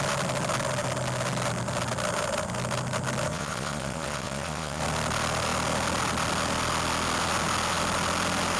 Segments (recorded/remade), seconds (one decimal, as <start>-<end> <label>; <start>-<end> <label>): 0.0-3.3 recorded; 3.3-4.8 remade; 4.8-8.6 recorded